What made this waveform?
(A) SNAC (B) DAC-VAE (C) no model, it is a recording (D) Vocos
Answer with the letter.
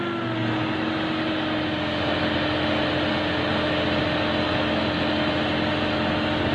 C